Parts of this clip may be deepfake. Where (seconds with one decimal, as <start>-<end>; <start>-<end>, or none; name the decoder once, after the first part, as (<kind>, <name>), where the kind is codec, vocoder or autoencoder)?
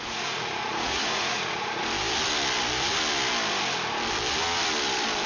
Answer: 0.0-1.8 (vocoder, Vocos)